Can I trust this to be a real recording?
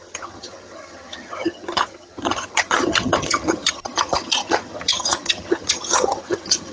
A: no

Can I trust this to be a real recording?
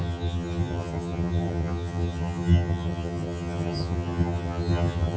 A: no